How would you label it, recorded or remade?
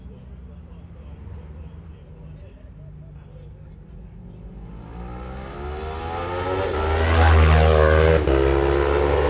recorded